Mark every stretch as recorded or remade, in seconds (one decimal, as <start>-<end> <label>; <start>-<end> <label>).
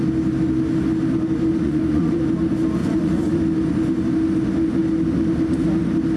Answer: 0.0-1.5 recorded; 1.5-2.2 remade; 2.2-2.8 recorded; 2.8-3.4 remade; 3.4-6.2 recorded